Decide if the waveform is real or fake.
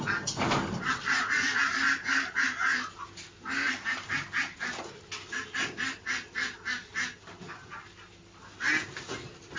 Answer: real